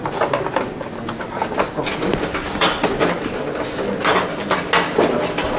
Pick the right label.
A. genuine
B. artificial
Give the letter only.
A